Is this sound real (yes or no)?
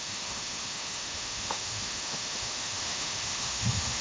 no